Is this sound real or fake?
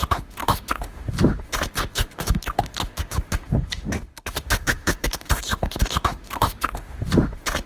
fake